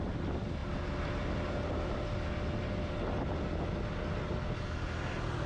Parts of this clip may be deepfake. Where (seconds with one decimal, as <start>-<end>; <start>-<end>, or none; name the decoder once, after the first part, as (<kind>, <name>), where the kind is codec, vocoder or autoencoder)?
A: none